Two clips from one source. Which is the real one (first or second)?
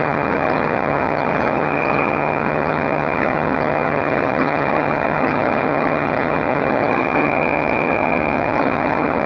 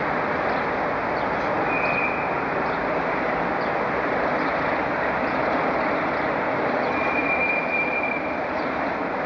second